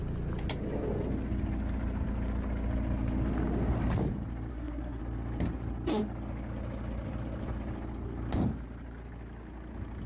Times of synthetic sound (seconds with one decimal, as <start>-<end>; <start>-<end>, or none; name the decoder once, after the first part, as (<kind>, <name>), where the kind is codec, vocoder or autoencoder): 4.5-5.0 (codec, SNAC)